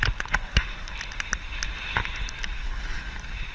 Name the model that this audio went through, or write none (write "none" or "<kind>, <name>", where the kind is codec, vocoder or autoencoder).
none